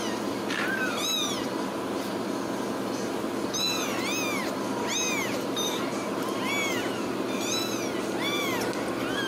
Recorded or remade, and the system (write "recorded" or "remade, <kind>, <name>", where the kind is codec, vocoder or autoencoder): recorded